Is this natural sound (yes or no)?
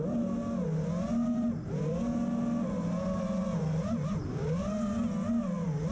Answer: yes